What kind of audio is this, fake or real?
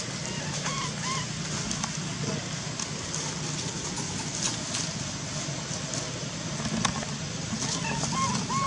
real